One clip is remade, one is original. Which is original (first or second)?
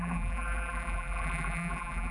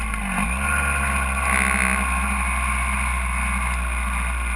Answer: second